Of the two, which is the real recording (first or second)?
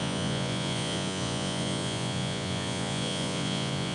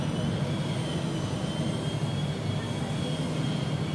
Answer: second